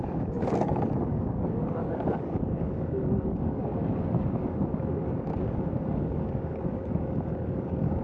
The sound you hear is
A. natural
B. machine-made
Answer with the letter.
B